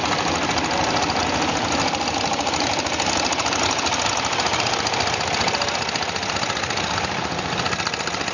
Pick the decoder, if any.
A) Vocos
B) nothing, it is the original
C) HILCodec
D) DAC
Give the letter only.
B